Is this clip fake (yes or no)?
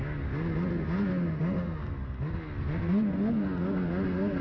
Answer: no